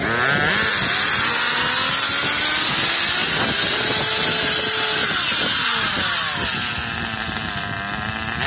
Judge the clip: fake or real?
real